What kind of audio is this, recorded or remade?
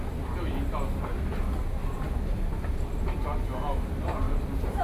recorded